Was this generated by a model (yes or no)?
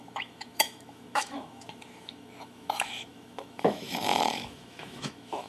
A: yes